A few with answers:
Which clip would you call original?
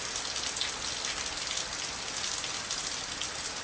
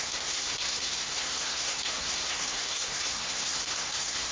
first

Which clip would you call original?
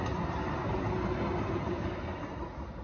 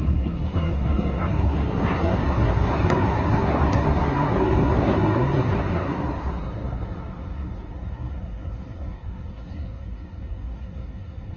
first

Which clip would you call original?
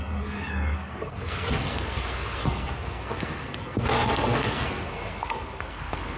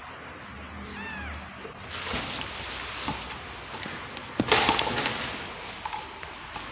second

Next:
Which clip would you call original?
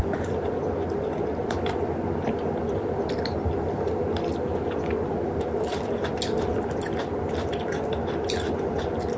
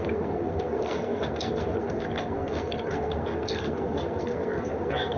first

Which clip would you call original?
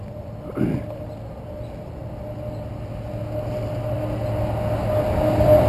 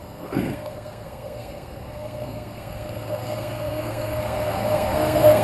first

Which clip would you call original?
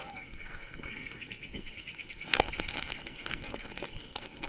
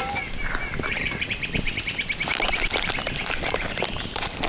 second